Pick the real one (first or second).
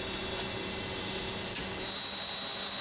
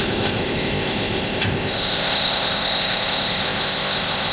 first